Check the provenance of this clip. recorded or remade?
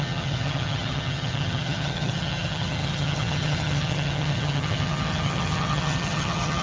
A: remade